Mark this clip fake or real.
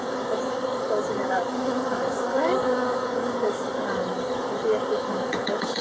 fake